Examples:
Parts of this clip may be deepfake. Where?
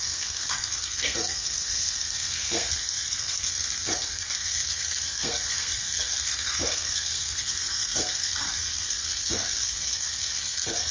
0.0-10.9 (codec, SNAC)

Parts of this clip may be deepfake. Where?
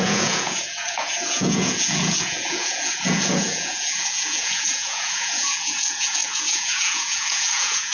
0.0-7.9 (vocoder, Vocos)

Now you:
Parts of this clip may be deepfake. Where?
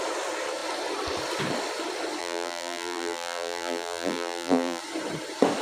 2.2-4.8 (vocoder, BigVGAN v2)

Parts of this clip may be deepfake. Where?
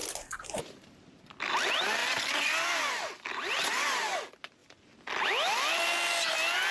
none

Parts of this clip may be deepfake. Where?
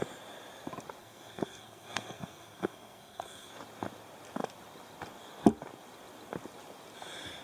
1.0-3.5 (codec, SNAC)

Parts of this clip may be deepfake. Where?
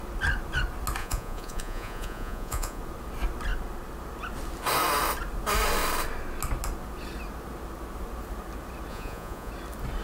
1.0-2.8 (vocoder, Vocos); 8.9-9.5